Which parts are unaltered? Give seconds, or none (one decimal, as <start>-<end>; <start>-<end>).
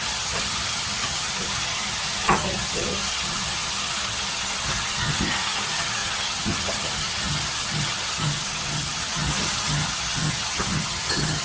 none